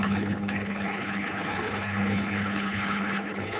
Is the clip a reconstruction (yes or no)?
yes